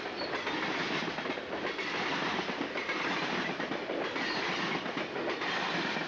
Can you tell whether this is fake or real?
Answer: fake